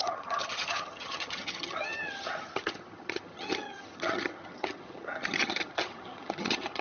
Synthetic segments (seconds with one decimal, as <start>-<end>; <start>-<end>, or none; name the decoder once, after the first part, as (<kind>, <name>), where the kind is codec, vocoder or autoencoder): 0.0-6.8 (vocoder, HiFi-GAN)